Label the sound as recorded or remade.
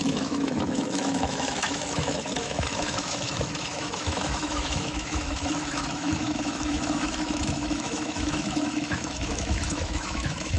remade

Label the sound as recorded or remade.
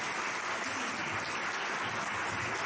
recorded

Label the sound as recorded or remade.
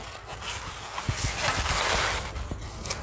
recorded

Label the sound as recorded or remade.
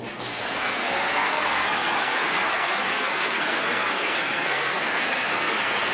remade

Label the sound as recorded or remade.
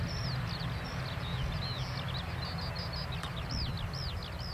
recorded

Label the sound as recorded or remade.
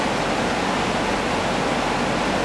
recorded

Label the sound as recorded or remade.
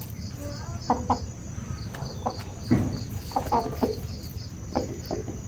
recorded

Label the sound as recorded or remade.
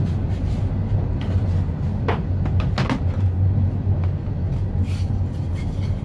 recorded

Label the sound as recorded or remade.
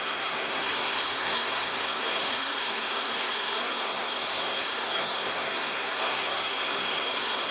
remade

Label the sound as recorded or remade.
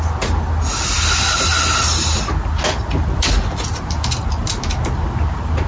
recorded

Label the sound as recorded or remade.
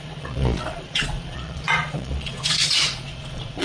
remade